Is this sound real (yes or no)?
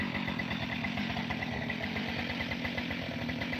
yes